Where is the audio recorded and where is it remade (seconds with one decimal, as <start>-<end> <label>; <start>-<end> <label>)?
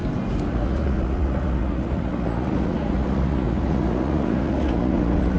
0.0-0.5 recorded; 0.5-5.4 remade